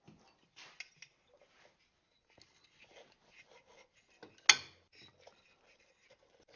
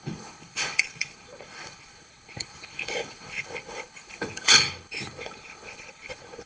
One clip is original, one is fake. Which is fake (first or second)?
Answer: second